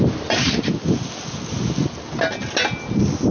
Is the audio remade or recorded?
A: recorded